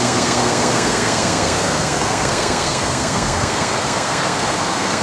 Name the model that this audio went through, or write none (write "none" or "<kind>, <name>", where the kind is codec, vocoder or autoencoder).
codec, SNAC